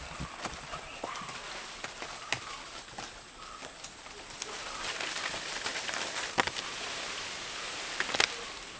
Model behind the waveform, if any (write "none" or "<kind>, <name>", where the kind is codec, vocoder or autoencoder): none